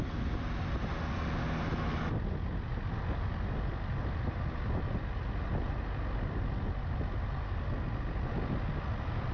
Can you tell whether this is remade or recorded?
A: recorded